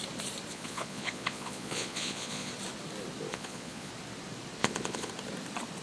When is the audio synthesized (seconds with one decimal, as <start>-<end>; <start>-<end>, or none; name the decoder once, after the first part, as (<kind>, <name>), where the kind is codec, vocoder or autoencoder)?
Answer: 0.5-2.5 (vocoder, Vocos); 3.3-3.9; 4.6-5.1